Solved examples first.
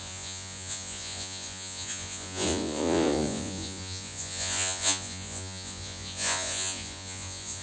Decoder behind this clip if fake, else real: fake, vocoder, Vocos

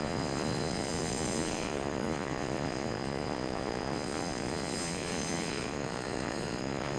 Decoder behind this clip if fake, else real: fake, vocoder, Vocos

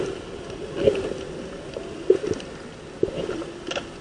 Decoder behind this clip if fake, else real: real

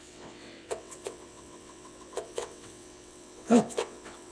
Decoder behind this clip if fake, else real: fake, vocoder, WaveNeXt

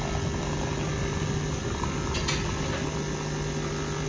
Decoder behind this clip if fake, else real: real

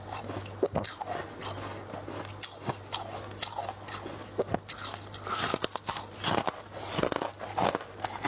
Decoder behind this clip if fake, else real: real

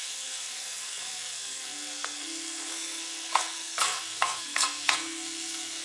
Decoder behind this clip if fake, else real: fake, codec, SNAC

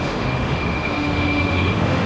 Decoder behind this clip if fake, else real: fake, autoencoder, DAC-VAE